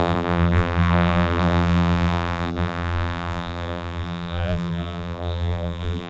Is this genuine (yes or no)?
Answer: no